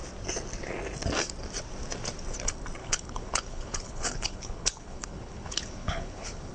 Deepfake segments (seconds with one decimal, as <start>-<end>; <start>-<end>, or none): 2.8-6.5